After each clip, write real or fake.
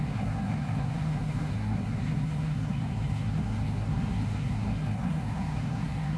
fake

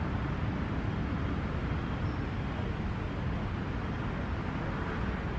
real